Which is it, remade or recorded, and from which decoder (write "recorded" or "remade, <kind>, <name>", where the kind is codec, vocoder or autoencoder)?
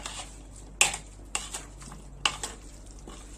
recorded